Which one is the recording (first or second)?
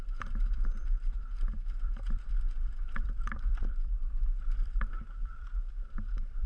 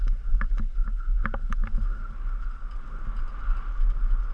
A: second